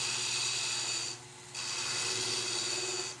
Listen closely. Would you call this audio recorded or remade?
recorded